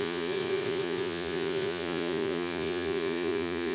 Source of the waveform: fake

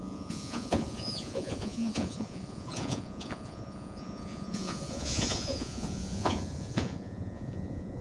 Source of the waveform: fake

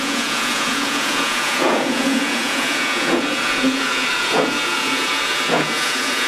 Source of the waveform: fake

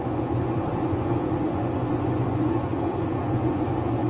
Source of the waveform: fake